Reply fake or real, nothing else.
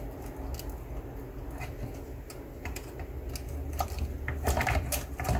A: real